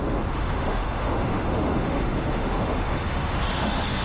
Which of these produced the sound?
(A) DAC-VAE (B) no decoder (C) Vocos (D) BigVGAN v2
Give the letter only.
A